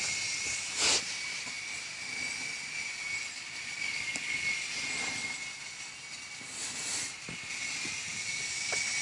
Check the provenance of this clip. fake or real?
real